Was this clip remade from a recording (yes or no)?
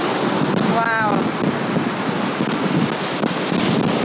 no